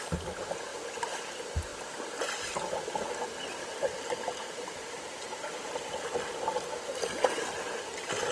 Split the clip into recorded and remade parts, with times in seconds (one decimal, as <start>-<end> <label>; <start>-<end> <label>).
0.0-8.3 recorded